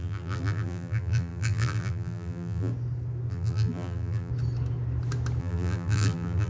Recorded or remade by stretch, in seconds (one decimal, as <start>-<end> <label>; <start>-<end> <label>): 0.0-2.7 remade; 2.7-3.3 recorded; 3.3-4.3 remade; 4.3-5.4 recorded; 5.4-6.5 remade